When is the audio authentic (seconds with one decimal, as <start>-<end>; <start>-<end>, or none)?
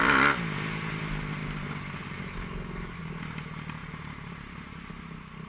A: 0.0-5.5